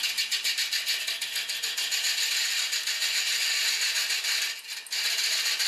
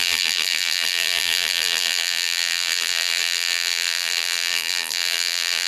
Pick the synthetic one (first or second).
second